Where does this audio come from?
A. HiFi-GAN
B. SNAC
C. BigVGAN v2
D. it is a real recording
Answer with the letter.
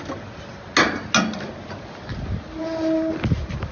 D